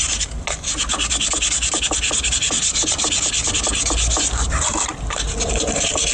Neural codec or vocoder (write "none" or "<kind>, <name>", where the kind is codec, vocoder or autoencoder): none